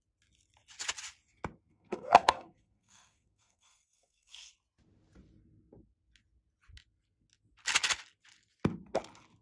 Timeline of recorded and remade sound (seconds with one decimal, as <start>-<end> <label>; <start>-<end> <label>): 0.0-1.7 recorded; 1.7-4.5 remade; 4.5-9.4 recorded